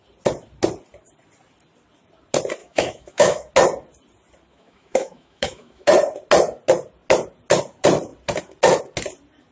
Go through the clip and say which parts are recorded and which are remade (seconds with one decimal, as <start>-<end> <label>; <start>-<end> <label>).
0.0-2.6 recorded; 2.6-3.5 remade; 3.5-4.5 recorded; 4.5-5.9 remade; 5.9-9.5 recorded